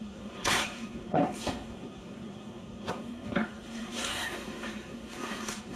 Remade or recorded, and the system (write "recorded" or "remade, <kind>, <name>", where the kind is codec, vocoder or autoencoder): remade, codec, SNAC